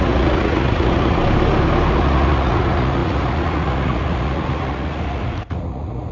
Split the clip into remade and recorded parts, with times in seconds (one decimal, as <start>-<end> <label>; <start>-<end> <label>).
0.0-1.2 remade; 1.2-1.9 recorded; 1.9-6.1 remade